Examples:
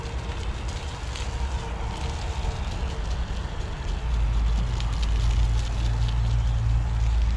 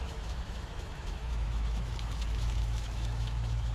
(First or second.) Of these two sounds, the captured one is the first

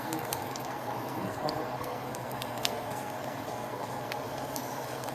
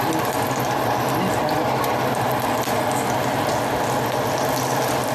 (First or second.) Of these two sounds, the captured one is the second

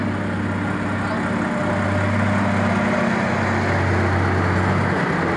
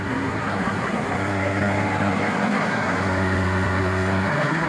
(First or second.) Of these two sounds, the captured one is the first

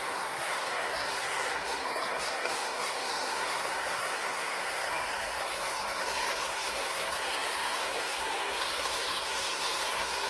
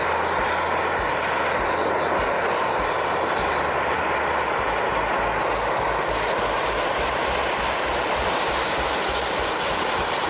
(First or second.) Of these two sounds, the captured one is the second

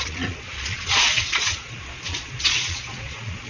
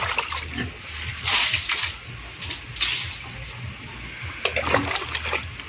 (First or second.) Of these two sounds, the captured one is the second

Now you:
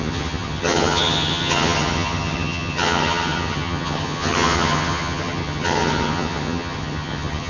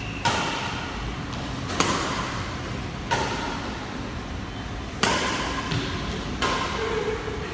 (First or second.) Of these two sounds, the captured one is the second